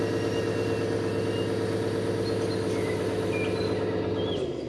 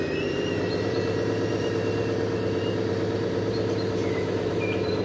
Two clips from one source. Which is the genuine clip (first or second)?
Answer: first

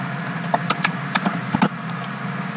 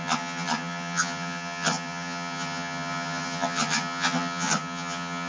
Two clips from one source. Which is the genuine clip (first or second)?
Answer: first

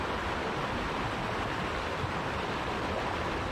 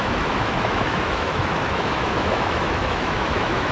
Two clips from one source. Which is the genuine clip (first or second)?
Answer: first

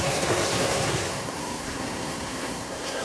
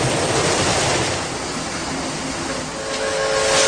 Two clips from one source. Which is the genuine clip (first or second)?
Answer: second